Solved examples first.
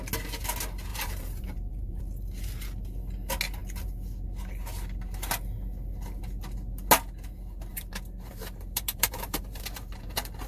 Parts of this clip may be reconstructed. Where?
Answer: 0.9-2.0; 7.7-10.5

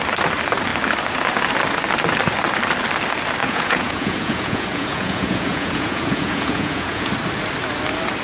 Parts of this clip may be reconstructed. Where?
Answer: 3.4-7.1